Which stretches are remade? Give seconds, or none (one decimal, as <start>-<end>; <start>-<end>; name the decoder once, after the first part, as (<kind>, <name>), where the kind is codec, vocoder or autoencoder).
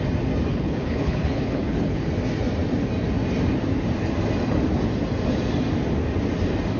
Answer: 0.5-2.1 (codec, HILCodec)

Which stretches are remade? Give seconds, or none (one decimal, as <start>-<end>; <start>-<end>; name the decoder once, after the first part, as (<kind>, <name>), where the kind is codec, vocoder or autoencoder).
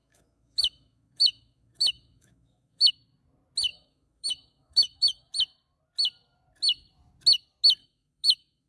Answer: 0.0-2.9 (autoencoder, DAC-VAE); 3.7-5.3; 7.8-8.7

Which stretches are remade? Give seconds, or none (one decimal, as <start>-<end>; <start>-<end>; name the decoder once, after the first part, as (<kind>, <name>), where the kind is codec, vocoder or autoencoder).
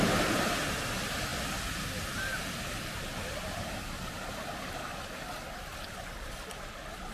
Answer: none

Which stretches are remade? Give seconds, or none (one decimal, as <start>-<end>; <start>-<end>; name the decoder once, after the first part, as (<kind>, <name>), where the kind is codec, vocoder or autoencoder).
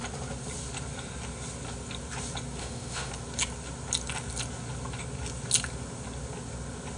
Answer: 2.6-3.1 (autoencoder, DAC-VAE)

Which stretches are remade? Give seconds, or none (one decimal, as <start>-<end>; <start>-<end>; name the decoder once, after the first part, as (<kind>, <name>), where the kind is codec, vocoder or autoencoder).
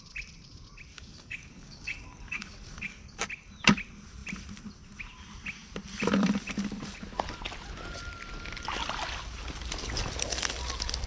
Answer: 0.9-3.2 (codec, DAC)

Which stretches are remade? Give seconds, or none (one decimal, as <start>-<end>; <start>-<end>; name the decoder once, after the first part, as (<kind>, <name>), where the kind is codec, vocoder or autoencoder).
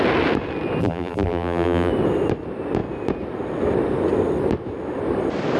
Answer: 0.8-1.9 (vocoder, BigVGAN v2)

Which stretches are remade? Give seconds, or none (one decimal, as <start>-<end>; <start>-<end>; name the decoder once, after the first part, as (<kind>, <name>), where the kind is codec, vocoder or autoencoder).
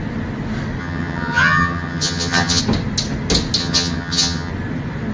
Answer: 0.8-2.6 (vocoder, HiFi-GAN); 3.6-4.5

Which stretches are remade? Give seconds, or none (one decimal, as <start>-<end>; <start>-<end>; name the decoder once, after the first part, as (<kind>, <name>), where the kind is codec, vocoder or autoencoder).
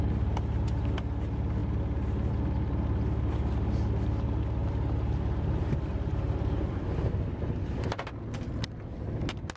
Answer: 4.6-8.1 (vocoder, BigVGAN v2)